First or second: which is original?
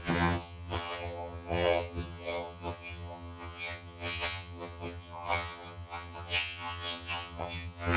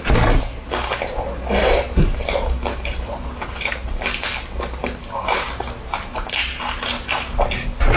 second